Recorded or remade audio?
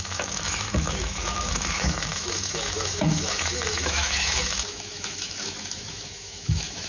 remade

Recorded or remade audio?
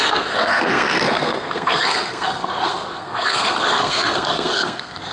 remade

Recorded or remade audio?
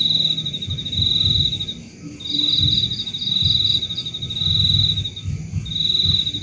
recorded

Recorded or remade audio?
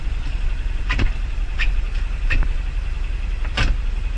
remade